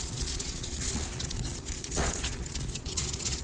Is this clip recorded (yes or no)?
no